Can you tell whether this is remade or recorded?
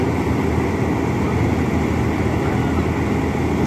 recorded